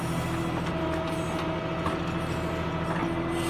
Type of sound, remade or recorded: recorded